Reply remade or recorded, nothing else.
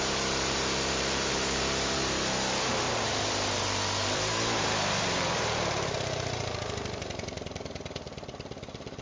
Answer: remade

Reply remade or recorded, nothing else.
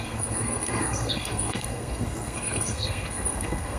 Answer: remade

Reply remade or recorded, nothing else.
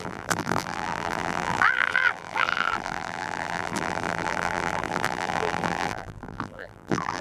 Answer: remade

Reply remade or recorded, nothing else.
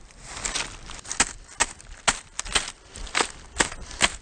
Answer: recorded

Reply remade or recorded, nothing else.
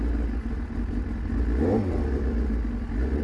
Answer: recorded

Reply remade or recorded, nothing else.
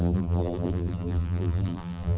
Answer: remade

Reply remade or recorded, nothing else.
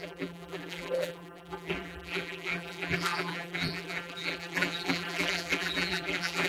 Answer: remade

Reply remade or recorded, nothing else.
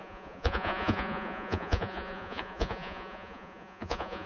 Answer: remade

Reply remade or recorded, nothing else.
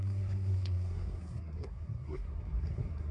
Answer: remade